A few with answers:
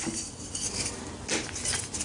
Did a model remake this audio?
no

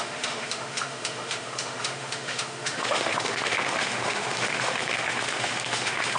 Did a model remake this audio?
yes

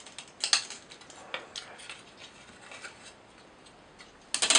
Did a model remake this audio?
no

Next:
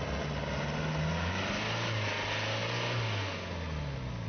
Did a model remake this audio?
no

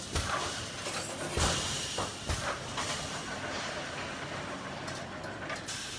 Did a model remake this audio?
no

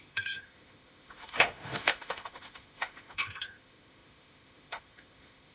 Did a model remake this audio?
yes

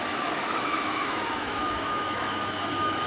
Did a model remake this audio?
yes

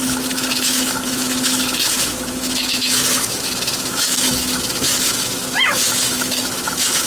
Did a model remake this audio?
yes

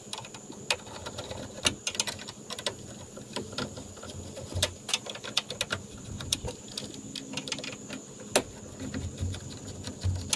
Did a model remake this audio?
no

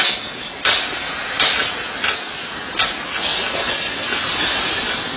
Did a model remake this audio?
no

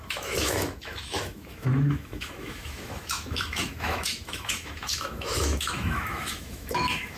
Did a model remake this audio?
yes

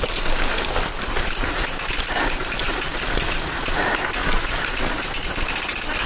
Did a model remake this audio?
no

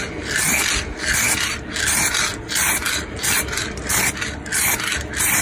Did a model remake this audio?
no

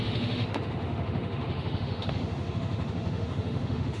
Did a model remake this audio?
yes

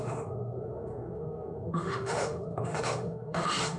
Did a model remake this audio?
yes